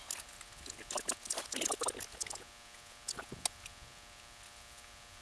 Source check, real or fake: real